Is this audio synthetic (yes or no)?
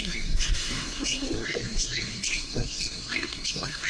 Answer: yes